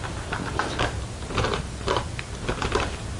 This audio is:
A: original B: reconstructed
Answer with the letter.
A